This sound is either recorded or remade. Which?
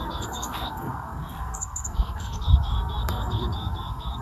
remade